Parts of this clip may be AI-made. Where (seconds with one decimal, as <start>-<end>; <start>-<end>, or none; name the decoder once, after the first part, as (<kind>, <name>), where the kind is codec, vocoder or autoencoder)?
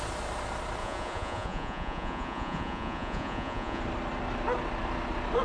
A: 0.8-3.8 (vocoder, Vocos)